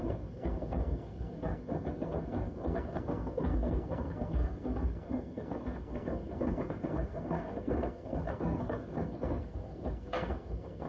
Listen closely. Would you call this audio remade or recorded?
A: remade